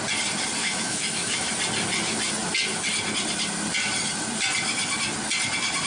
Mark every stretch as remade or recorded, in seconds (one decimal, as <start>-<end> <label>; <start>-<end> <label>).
0.0-0.6 recorded; 0.6-1.5 remade; 1.5-5.9 recorded